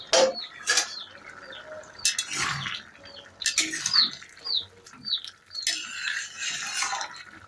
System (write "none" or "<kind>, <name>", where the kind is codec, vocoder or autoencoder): none